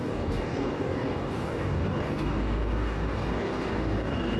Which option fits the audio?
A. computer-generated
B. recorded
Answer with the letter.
A